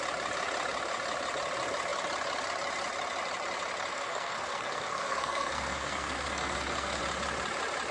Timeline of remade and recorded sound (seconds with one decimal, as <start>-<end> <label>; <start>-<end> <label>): 0.0-3.9 recorded; 3.9-7.0 remade; 7.0-7.9 recorded